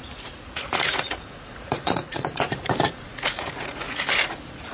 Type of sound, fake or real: fake